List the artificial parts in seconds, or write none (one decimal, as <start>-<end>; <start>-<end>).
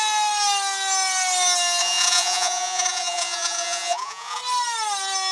1.8-4.4